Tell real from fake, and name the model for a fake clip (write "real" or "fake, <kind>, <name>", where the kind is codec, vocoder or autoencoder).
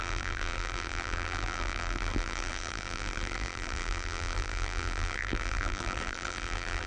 fake, vocoder, BigVGAN v2